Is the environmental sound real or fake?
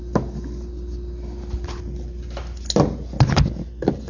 real